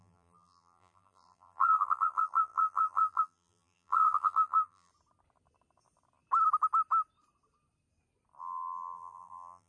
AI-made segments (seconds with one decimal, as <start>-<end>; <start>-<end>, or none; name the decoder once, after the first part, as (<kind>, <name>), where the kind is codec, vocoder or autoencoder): 0.0-4.9 (vocoder, BigVGAN v2); 8.4-9.7